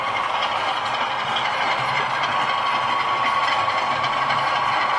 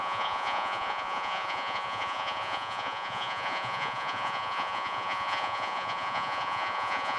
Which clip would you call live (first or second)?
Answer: first